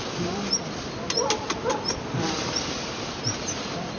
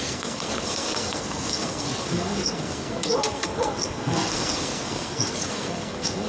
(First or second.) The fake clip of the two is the second